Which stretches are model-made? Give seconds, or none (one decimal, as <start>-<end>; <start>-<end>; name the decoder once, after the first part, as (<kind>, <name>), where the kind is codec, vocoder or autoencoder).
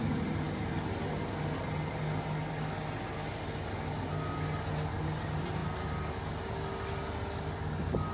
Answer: none